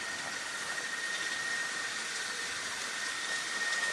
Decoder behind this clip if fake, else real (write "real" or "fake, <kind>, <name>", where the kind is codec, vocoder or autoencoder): fake, vocoder, BigVGAN v2